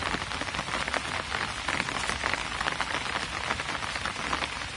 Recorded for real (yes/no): yes